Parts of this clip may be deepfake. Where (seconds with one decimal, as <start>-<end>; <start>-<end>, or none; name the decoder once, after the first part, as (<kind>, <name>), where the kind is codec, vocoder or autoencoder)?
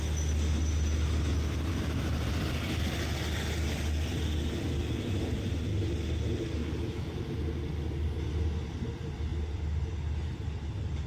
none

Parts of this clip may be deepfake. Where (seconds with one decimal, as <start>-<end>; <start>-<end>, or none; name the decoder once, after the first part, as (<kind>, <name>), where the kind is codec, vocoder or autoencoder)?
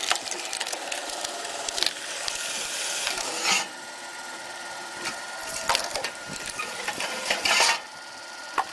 0.0-8.7 (vocoder, BigVGAN v2)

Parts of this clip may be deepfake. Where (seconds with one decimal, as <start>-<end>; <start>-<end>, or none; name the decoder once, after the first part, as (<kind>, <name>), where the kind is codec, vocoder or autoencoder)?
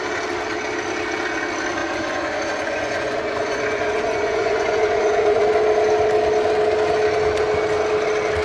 1.8-5.5 (vocoder, Vocos)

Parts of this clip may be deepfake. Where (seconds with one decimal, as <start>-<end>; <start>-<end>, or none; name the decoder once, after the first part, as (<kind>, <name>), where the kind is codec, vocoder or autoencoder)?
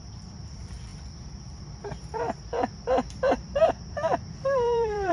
0.0-0.9 (vocoder, BigVGAN v2); 3.7-5.1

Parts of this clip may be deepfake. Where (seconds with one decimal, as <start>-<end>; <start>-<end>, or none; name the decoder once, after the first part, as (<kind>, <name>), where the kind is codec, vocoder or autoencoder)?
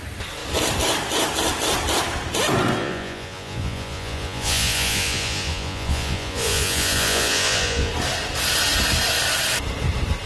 2.8-7.9 (vocoder, Vocos)